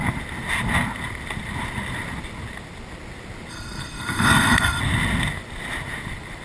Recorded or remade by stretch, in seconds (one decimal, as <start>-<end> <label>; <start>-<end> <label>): 0.0-3.5 recorded; 3.5-4.8 remade; 4.8-6.4 recorded